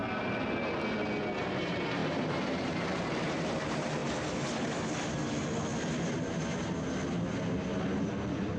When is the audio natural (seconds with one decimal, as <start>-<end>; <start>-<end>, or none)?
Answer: 0.0-1.4; 4.0-8.6